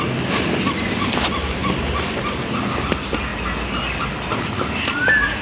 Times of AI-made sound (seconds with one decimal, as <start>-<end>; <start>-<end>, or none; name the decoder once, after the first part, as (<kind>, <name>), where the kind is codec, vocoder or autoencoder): none